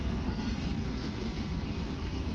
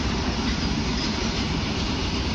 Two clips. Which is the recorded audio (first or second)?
second